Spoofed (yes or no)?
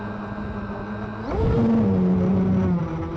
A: no